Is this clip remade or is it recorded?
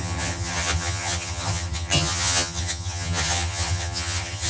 remade